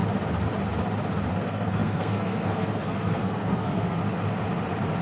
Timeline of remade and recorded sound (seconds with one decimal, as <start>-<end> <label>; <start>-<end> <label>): 0.0-1.3 recorded; 1.3-4.0 remade; 4.0-5.0 recorded